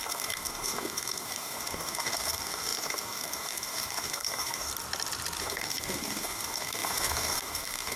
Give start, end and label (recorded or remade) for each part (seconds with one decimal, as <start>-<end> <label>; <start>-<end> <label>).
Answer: 0.0-4.7 remade; 4.7-5.4 recorded; 5.4-8.0 remade